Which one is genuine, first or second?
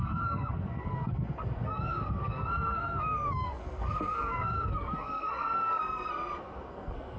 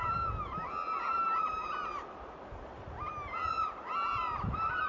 second